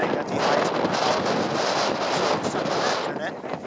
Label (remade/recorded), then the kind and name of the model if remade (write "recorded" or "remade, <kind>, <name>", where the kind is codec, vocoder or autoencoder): recorded